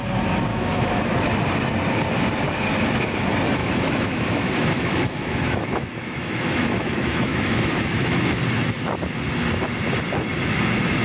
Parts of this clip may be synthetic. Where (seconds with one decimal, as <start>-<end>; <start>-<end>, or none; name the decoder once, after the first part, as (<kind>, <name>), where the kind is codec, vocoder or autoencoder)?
0.5-1.0 (autoencoder, DAC-VAE); 3.6-8.4